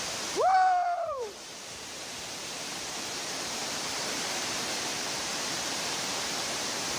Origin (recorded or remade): remade